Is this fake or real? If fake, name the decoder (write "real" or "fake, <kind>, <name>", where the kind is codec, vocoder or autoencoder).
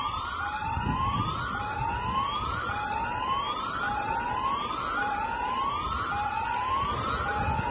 real